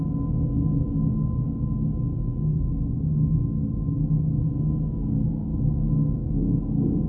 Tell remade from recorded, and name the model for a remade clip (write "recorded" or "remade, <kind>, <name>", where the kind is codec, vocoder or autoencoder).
recorded